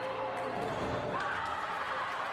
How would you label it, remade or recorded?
remade